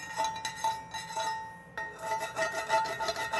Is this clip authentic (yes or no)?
yes